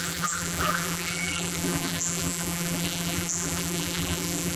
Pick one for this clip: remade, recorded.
remade